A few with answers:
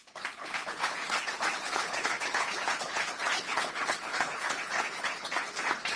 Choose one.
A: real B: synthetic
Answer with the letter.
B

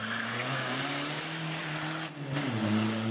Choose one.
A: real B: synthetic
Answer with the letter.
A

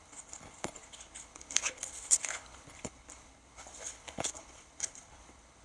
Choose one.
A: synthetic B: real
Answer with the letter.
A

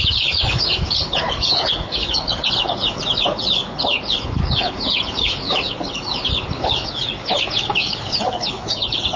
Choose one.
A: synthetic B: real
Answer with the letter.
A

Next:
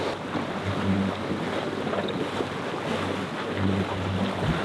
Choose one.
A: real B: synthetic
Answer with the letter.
A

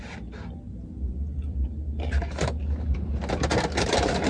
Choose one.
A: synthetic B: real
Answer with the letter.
B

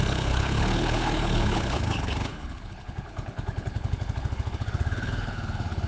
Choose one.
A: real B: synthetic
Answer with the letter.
B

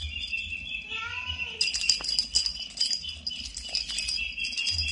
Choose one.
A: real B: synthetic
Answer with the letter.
A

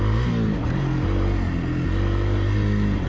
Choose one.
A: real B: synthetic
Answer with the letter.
A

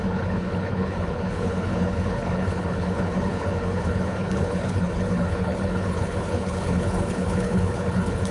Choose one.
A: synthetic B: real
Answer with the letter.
A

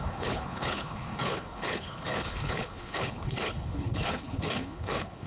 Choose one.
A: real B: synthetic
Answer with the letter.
B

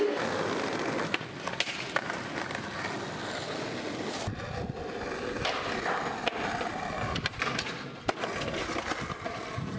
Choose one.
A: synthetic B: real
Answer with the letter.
B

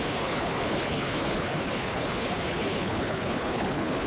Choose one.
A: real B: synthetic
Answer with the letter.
B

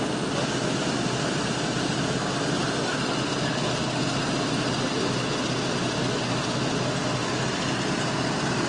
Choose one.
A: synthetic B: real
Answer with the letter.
B